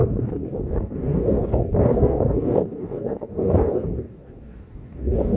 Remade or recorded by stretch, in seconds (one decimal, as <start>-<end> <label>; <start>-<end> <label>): 0.0-5.4 remade